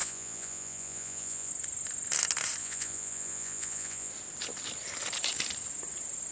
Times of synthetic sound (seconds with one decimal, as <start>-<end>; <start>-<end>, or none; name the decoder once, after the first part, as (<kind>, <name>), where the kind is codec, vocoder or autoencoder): 0.0-1.5 (vocoder, Vocos); 2.6-4.1